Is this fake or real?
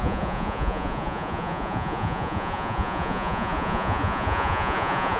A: fake